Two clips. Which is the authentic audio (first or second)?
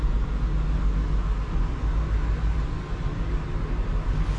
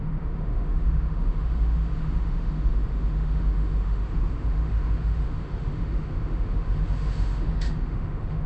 first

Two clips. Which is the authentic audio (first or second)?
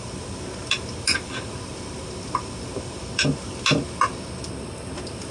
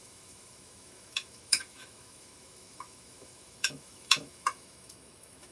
first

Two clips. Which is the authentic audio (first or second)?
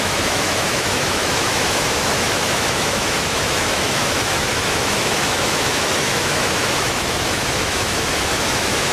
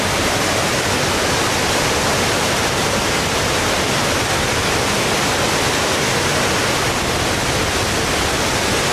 second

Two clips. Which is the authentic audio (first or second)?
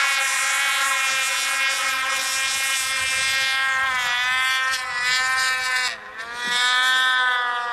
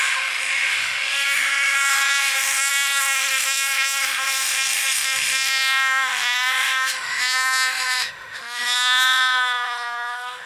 first